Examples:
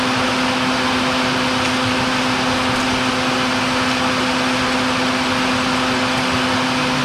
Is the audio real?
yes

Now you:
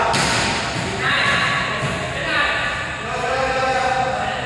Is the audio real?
yes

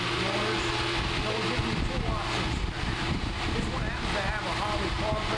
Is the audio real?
yes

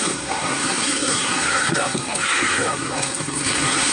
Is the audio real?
no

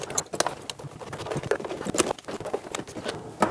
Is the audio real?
yes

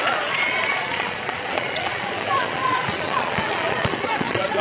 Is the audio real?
no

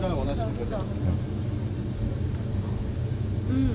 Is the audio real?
yes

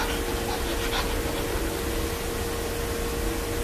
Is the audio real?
yes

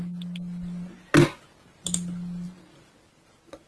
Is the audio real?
yes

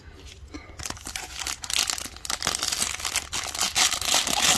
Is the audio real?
yes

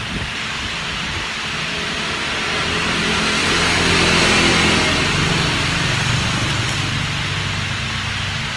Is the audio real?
yes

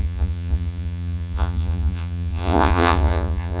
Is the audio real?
no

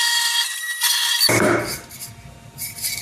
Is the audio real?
yes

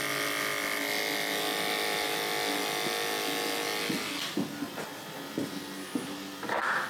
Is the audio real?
yes